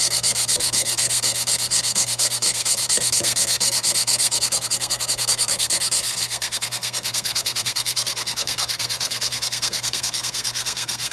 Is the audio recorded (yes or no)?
no